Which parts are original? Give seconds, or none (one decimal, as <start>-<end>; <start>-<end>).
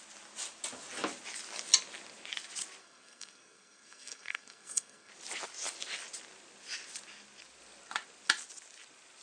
0.0-2.8; 5.1-9.2